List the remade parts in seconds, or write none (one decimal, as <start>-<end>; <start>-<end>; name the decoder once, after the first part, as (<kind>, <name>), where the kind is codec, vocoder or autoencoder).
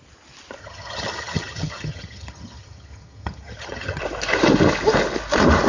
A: 0.6-4.0 (vocoder, HiFi-GAN)